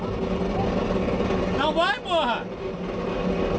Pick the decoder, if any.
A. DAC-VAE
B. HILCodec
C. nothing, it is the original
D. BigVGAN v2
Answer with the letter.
C